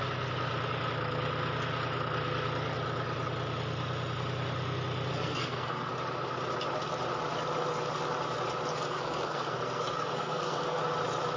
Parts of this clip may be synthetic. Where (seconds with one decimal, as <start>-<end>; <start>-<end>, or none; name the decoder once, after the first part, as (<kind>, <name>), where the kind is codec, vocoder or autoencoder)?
5.1-5.9 (codec, SNAC); 8.7-10.8